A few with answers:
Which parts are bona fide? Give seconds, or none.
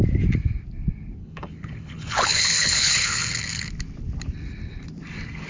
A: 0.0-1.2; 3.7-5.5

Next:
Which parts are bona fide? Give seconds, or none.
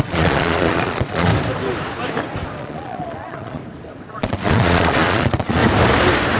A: 1.3-2.6; 3.6-4.1; 5.6-6.4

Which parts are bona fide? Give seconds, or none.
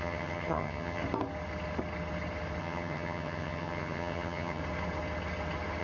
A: 1.0-2.6; 4.6-5.8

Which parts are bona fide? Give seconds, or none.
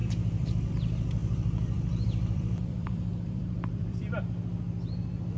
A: 0.7-1.2; 4.2-5.4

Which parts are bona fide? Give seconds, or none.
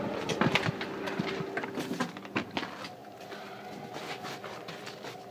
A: 0.0-5.3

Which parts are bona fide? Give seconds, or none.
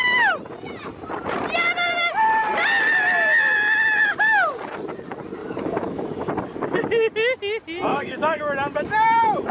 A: 0.0-5.4; 6.3-7.9; 8.4-9.5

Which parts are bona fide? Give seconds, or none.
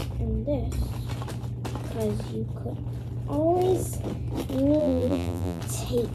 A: 0.0-4.8; 5.6-6.1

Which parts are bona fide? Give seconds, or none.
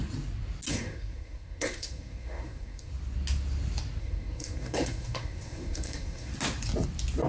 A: 0.0-0.7; 2.9-4.0; 6.3-7.3